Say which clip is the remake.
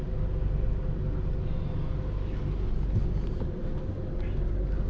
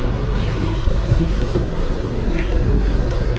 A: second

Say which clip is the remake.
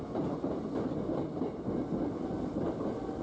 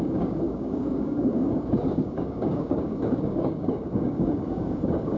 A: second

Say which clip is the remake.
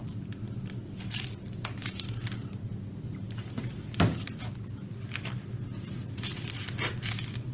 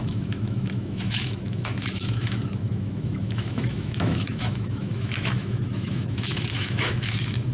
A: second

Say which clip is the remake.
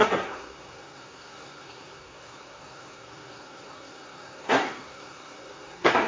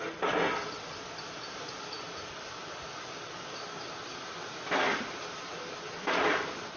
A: first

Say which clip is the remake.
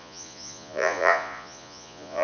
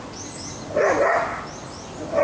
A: first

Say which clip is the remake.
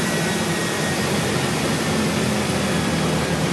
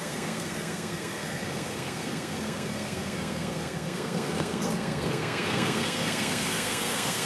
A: second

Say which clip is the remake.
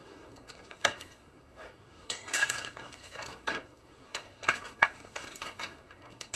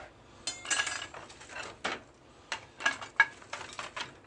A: first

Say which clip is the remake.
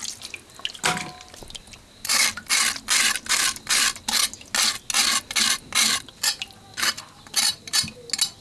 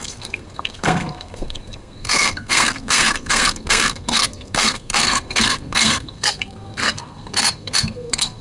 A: second